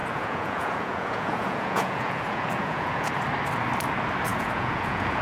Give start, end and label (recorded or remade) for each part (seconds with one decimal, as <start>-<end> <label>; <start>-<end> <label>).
0.0-3.1 remade; 3.1-4.3 recorded; 4.3-5.2 remade